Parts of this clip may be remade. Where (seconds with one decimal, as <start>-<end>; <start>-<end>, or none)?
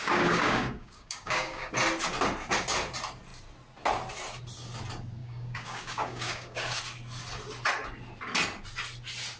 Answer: 0.0-1.7; 5.2-6.8